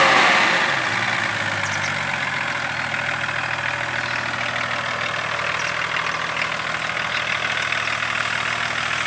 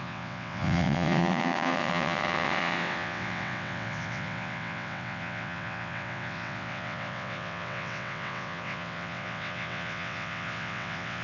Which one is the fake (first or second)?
second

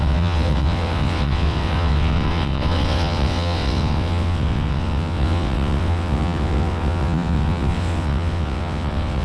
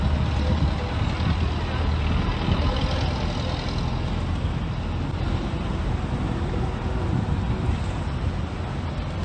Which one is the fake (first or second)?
first